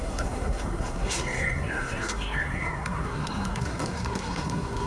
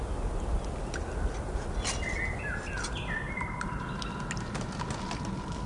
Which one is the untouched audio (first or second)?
second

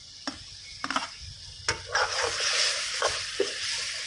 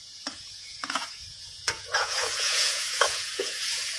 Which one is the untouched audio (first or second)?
first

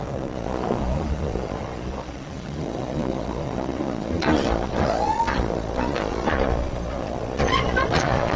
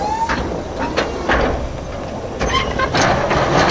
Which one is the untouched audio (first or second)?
second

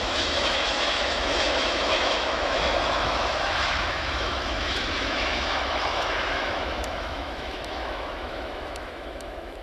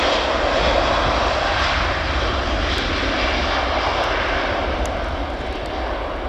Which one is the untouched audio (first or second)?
second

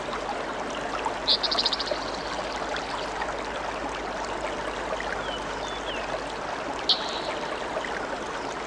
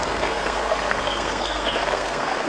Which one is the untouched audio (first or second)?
first